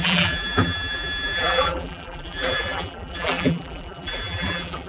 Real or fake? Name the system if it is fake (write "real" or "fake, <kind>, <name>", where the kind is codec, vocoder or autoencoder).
fake, vocoder, BigVGAN v2